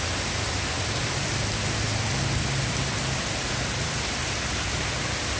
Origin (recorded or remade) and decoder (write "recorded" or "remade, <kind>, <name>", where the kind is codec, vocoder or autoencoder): recorded